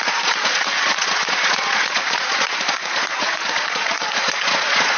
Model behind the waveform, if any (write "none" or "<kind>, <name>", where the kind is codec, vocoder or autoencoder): vocoder, Vocos